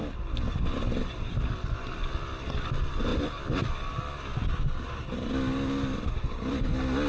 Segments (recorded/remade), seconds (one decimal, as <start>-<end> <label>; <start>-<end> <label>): 0.0-7.1 recorded